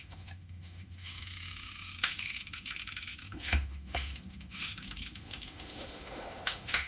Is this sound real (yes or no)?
no